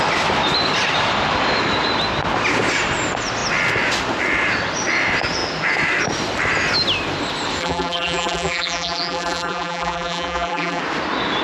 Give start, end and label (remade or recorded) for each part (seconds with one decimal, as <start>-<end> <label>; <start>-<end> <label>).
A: 0.0-7.6 recorded; 7.6-10.8 remade; 10.8-11.4 recorded

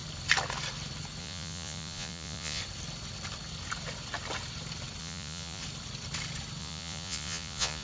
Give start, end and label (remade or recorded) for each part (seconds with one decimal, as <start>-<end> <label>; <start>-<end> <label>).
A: 0.0-1.2 recorded; 1.2-2.6 remade; 2.6-5.0 recorded; 5.0-5.6 remade; 5.6-6.6 recorded; 6.6-7.8 remade

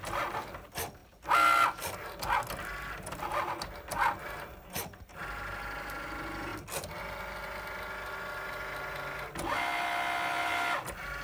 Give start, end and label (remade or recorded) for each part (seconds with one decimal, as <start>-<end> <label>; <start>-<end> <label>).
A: 0.0-11.2 recorded

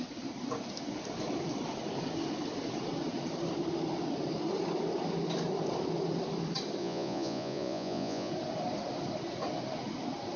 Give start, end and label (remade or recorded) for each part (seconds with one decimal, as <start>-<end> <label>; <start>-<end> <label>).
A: 0.0-6.8 recorded; 6.8-8.3 remade; 8.3-10.4 recorded

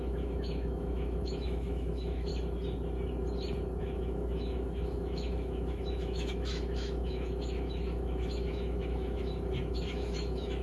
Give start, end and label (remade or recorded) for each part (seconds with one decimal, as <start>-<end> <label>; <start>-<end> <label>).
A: 0.0-2.3 remade; 2.3-3.8 recorded; 3.8-10.6 remade

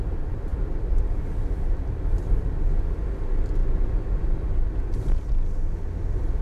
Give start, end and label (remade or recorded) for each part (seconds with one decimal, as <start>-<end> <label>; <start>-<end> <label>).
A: 0.0-6.4 recorded

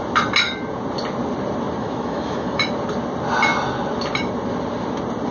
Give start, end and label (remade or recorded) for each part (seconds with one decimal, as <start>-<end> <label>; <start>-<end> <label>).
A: 0.0-1.8 recorded; 1.8-2.7 remade; 2.7-5.3 recorded

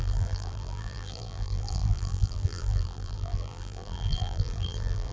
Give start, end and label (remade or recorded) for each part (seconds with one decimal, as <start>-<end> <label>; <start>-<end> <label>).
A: 0.0-5.1 remade